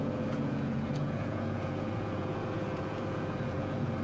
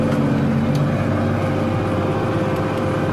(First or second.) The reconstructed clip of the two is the first